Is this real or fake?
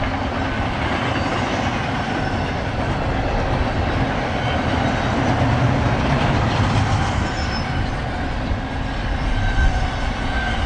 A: real